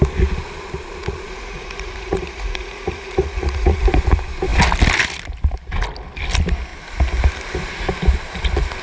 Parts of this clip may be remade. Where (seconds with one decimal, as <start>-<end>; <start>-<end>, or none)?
1.0-3.8